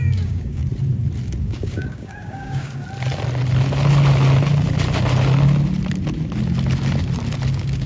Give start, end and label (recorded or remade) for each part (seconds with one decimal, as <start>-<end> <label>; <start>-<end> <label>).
0.0-0.6 remade; 0.6-1.4 recorded; 1.4-2.8 remade; 2.8-7.5 recorded; 7.5-7.9 remade